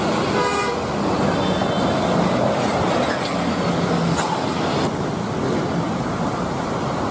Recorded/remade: recorded